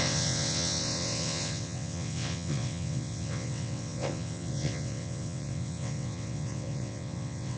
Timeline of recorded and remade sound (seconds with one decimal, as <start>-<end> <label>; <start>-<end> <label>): 0.0-7.6 remade